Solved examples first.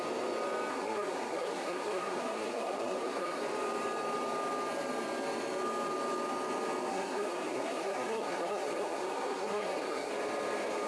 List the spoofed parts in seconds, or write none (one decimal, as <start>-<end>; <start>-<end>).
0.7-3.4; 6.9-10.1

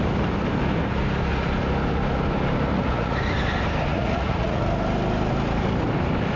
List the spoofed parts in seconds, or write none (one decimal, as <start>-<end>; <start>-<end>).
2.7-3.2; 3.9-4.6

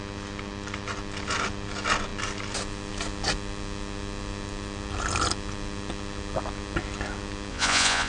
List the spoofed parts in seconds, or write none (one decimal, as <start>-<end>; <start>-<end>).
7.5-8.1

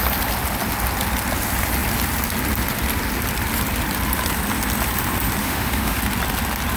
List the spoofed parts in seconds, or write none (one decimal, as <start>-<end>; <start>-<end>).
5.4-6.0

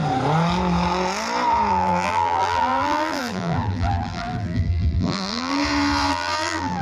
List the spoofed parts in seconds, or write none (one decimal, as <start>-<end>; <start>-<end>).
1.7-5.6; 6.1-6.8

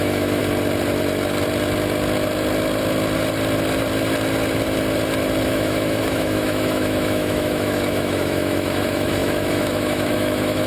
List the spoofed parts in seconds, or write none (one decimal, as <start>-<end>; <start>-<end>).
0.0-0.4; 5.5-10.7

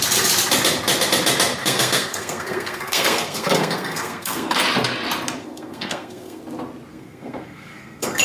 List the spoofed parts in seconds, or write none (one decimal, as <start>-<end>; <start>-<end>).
1.6-4.6; 5.4-6.4; 6.9-8.2

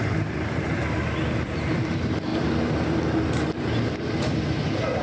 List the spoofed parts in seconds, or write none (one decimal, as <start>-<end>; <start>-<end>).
0.0-0.8; 1.6-2.3